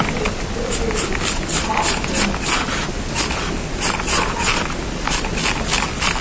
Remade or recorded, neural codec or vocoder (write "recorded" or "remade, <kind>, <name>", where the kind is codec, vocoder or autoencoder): recorded